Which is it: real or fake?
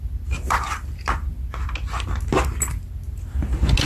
real